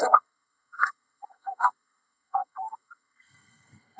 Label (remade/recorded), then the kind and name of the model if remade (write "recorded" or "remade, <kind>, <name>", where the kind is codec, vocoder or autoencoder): remade, codec, SNAC